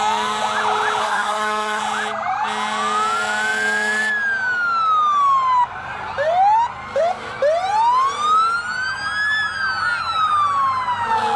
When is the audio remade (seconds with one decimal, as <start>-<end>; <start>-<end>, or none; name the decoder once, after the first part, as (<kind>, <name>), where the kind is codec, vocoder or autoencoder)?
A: 1.0-1.8 (codec, SNAC)